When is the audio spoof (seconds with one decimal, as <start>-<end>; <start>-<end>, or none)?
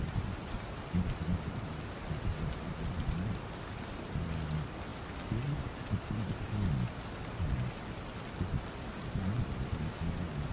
none